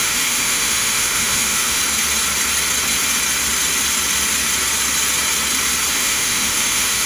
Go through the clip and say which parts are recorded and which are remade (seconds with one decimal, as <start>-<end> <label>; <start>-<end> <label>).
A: 0.0-1.8 remade; 1.8-5.9 recorded; 5.9-7.1 remade

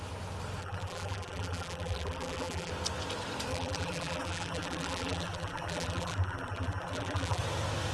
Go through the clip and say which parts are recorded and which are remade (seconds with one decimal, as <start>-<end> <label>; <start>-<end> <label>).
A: 0.0-0.6 recorded; 0.6-2.7 remade; 2.7-3.5 recorded; 3.5-7.4 remade; 7.4-7.9 recorded

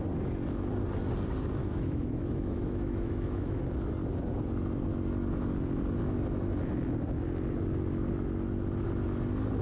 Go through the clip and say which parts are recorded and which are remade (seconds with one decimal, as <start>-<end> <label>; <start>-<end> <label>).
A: 0.0-1.6 recorded; 1.6-3.6 remade; 3.6-9.6 recorded

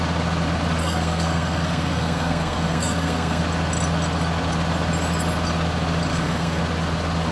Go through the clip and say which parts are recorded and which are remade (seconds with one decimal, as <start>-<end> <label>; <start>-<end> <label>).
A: 0.0-0.8 recorded; 0.8-3.4 remade; 3.4-6.1 recorded; 6.1-6.6 remade; 6.6-7.3 recorded